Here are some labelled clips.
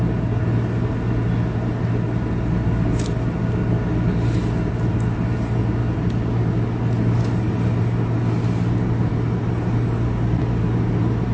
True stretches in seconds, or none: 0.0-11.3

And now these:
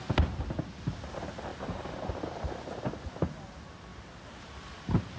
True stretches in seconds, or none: 0.0-5.2

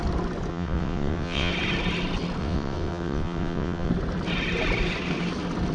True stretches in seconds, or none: 0.0-0.5; 1.5-2.4; 3.9-5.7

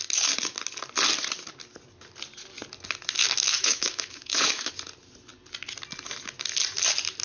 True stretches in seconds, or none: 0.0-3.2; 4.7-7.2